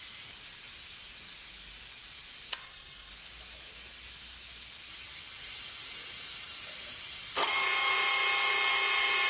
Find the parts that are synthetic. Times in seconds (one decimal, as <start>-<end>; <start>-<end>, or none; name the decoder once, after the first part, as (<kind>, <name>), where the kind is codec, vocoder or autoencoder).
2.6-3.1 (codec, SNAC)

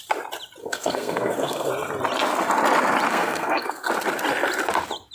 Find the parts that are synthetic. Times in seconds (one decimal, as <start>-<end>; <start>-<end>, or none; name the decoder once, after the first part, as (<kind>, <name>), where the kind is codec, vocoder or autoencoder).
0.6-1.7 (codec, SNAC); 3.1-3.9

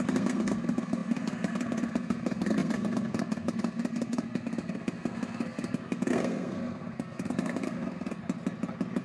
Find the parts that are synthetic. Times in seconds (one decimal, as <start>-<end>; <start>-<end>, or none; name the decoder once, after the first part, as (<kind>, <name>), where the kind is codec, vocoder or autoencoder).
0.0-8.2 (codec, SNAC)

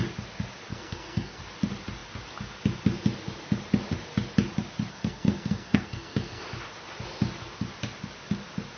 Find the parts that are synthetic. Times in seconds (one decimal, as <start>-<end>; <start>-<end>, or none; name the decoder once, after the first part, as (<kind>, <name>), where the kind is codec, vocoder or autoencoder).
0.7-1.4 (codec, SNAC); 4.9-6.4

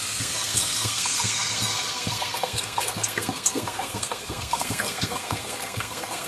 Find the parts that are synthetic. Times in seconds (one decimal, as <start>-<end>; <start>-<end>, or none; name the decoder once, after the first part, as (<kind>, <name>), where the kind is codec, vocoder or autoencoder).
0.0-6.3 (codec, SNAC)

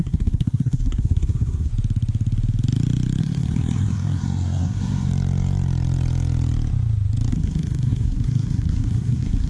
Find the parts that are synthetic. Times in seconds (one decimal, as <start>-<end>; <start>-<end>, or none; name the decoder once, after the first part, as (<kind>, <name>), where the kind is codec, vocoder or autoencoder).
0.0-1.7 (codec, SNAC); 3.2-5.1; 7.3-9.5

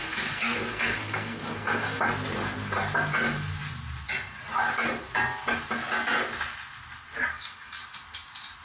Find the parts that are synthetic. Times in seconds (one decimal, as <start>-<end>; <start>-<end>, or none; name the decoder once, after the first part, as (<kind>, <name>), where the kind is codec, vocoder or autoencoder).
0.0-2.1 (codec, SNAC); 7.3-7.8